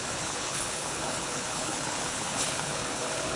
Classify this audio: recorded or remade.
remade